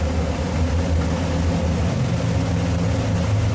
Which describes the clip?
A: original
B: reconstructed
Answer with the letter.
A